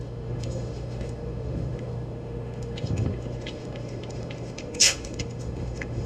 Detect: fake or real fake